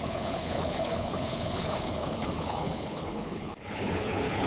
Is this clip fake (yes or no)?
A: yes